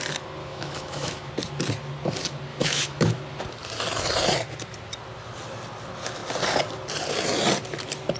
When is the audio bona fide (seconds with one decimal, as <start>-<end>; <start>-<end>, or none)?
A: 0.0-0.4; 1.3-2.5; 3.2-8.2